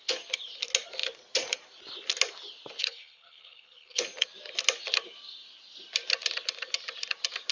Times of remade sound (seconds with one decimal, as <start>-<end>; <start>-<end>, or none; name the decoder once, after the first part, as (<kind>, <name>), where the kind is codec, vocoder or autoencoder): 2.8-4.0 (codec, HILCodec)